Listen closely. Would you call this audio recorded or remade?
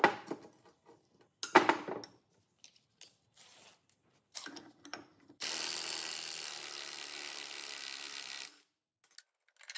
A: recorded